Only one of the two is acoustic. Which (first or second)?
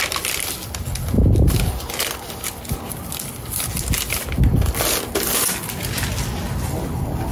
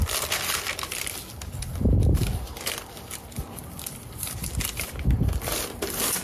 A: first